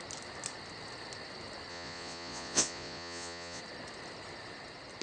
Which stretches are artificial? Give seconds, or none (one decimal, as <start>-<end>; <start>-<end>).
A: 1.7-3.6